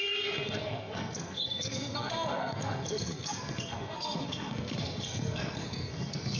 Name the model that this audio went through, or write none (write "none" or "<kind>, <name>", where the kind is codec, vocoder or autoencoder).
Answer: codec, SNAC